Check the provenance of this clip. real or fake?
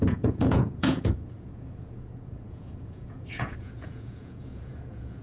fake